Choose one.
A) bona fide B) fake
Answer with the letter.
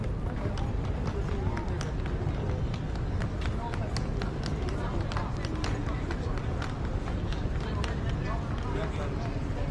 A